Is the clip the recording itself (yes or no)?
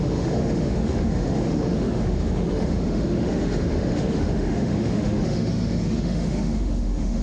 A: no